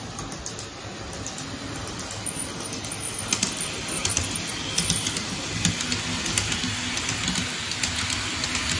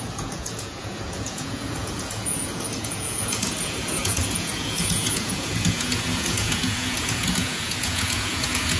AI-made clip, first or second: second